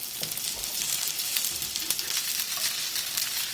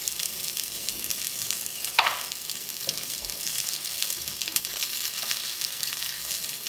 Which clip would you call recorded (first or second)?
first